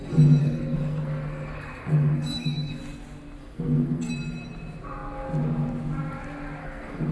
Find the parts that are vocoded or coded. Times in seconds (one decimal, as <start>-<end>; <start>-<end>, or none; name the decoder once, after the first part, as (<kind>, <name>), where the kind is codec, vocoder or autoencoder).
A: 0.4-2.8 (codec, SNAC); 3.4-4.1; 6.6-7.1